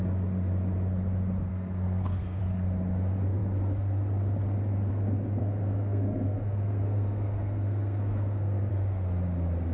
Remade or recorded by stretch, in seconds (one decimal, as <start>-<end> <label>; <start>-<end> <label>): 0.0-1.5 recorded; 1.5-2.4 remade; 2.4-5.4 recorded; 5.4-8.7 remade; 8.7-9.7 recorded